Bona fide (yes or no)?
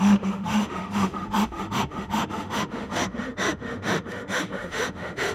no